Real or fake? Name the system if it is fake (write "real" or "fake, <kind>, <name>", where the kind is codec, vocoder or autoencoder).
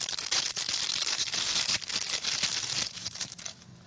real